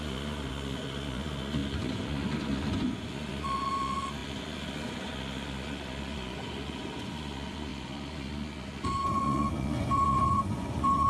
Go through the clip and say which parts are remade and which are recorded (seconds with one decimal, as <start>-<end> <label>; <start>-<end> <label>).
0.0-11.1 remade